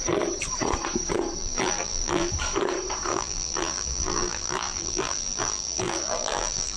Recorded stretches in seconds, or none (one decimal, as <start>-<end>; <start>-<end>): 0.0-1.4; 2.3-3.1